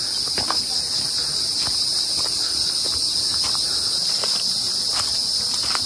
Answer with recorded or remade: recorded